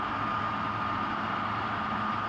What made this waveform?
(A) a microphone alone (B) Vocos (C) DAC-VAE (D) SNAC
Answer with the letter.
A